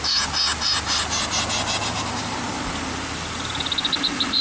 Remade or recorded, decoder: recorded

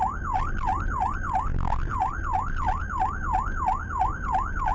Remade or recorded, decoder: recorded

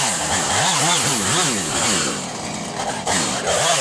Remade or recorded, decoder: recorded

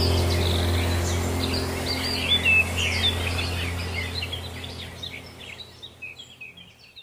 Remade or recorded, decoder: recorded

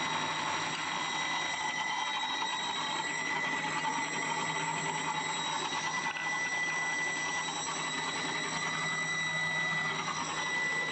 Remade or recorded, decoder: recorded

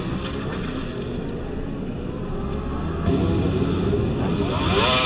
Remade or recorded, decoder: recorded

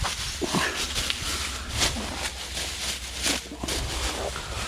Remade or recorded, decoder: recorded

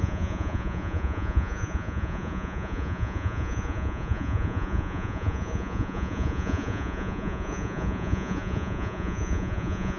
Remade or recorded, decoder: remade, vocoder, Vocos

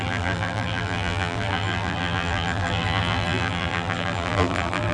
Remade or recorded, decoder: remade, vocoder, BigVGAN v2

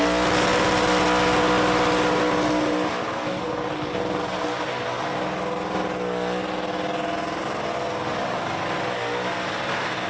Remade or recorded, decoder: recorded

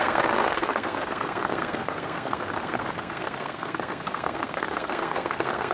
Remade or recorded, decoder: remade, codec, SNAC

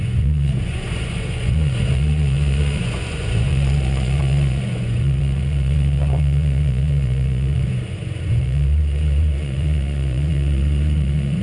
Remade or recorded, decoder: remade, vocoder, Vocos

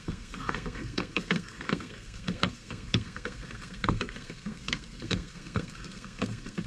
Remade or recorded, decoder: remade, codec, SNAC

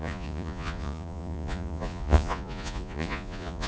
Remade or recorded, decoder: remade, vocoder, Vocos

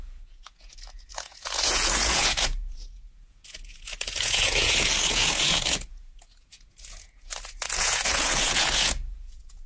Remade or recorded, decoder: remade, vocoder, Vocos